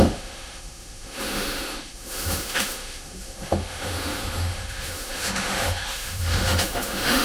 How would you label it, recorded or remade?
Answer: remade